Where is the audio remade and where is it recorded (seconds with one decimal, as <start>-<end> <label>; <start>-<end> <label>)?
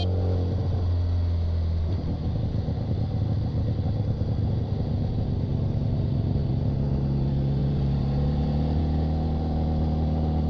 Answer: 0.0-7.6 recorded; 7.6-8.8 remade; 8.8-10.5 recorded